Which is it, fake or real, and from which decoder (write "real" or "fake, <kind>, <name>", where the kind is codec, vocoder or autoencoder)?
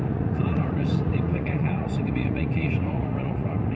fake, vocoder, Vocos